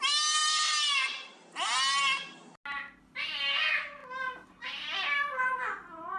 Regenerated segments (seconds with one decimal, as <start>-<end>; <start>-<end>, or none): none